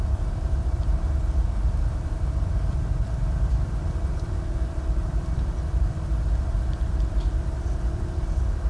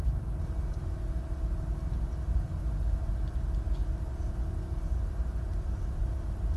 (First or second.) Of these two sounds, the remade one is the first